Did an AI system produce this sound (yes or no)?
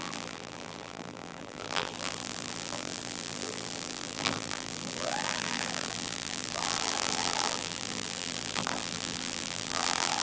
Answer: yes